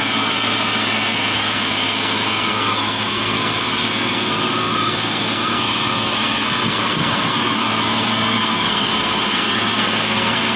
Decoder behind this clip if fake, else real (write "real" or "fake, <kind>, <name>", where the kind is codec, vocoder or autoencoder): fake, codec, SNAC